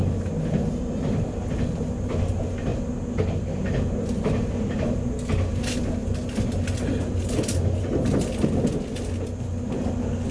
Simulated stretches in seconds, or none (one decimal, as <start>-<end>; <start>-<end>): none